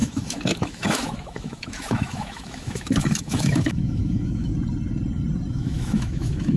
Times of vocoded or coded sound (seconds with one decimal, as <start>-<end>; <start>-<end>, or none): 0.0-4.5; 5.5-6.6